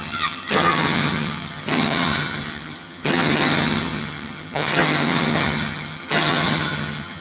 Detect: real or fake fake